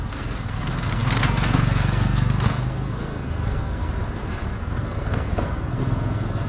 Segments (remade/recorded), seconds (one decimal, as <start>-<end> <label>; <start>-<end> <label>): 0.0-6.5 remade